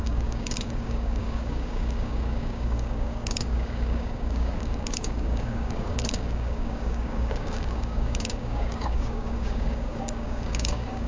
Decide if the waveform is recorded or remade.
remade